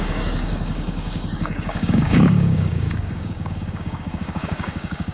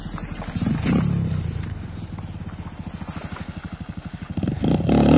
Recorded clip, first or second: second